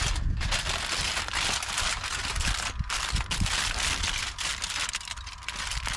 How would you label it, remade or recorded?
recorded